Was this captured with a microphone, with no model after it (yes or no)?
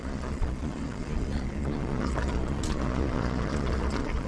no